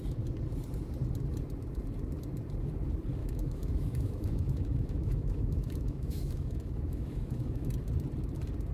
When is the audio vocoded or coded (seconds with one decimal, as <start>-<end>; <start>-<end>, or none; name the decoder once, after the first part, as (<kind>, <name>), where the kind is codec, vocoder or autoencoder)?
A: 3.2-7.7 (autoencoder, DAC-VAE)

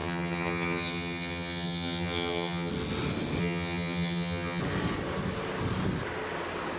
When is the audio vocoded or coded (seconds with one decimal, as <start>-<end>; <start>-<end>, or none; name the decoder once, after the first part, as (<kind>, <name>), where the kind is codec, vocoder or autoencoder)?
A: 0.0-2.7 (vocoder, HiFi-GAN); 3.4-4.6

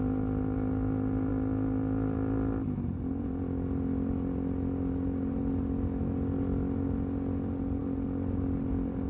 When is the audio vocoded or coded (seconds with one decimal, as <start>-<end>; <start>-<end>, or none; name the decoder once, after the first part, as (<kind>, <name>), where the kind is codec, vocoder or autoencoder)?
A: none

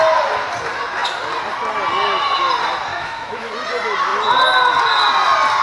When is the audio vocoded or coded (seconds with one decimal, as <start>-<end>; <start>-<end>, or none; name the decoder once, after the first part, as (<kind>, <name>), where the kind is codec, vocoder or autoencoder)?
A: 2.9-3.5 (autoencoder, DAC-VAE)

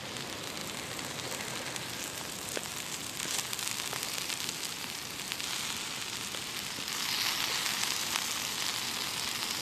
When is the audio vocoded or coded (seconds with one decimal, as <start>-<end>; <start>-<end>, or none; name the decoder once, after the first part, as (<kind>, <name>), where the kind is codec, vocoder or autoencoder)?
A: none

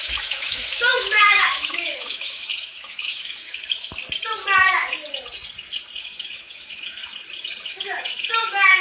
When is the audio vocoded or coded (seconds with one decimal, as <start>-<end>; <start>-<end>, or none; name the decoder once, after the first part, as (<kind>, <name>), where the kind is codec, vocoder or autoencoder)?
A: 0.0-4.0 (autoencoder, DAC-VAE); 6.0-7.0; 7.7-8.8

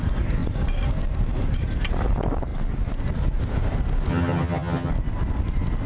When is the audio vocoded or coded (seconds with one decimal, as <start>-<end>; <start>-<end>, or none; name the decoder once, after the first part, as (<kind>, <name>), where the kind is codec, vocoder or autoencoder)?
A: 4.1-4.9 (vocoder, HiFi-GAN)